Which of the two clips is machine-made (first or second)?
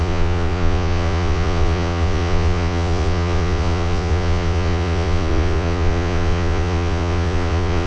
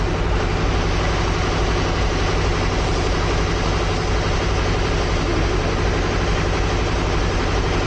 first